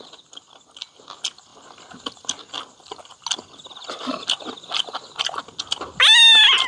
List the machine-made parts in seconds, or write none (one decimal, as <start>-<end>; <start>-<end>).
none